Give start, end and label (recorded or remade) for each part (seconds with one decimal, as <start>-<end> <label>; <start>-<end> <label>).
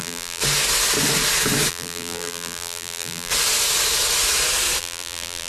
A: 0.0-0.4 remade; 0.4-1.7 recorded; 1.7-3.3 remade; 3.3-4.8 recorded; 4.8-5.5 remade